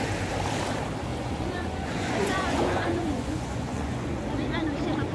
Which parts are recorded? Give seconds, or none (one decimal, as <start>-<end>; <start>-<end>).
0.0-1.1; 4.2-5.1